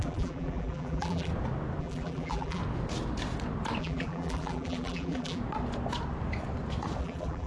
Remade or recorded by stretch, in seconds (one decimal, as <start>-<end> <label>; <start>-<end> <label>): 0.0-1.3 remade; 1.3-1.8 recorded; 1.8-2.6 remade; 2.6-3.8 recorded; 3.8-5.4 remade; 5.4-7.0 recorded; 7.0-7.5 remade